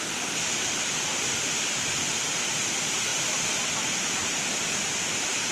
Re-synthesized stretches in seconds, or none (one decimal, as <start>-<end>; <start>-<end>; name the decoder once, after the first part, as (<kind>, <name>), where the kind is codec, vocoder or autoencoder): none